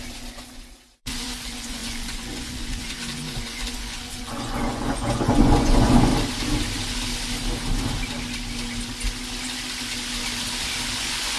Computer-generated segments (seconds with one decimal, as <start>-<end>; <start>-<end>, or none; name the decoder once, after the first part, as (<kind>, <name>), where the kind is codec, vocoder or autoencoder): 0.0-6.1 (vocoder, Vocos); 11.0-11.4